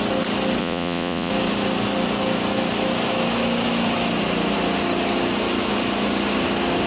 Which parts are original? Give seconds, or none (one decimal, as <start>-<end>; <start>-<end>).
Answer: 0.0-0.6; 1.3-6.9